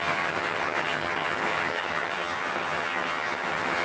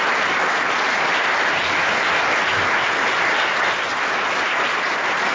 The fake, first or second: first